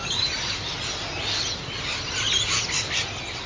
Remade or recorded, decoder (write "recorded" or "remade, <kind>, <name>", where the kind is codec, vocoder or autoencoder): recorded